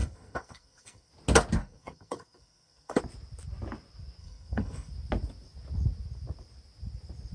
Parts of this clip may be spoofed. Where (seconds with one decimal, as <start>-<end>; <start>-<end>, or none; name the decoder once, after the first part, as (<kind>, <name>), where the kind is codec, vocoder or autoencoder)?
0.0-1.1 (codec, SNAC); 1.6-3.0; 4.2-4.9